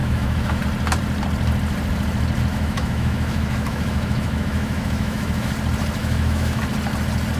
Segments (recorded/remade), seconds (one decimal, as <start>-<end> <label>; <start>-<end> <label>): 0.0-0.6 remade; 0.6-2.5 recorded; 2.5-5.5 remade; 5.5-6.0 recorded; 6.0-6.6 remade; 6.6-7.4 recorded